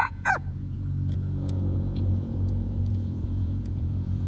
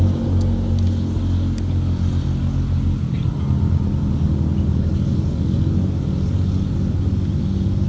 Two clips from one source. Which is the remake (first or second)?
first